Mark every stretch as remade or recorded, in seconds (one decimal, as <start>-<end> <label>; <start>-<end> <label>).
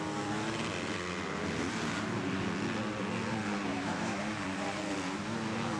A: 0.0-3.7 recorded; 3.7-4.2 remade; 4.2-5.8 recorded